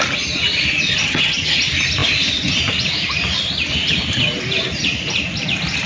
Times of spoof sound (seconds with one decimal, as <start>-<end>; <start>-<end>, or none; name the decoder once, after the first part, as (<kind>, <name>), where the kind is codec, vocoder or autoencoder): 1.0-1.6 (vocoder, HiFi-GAN)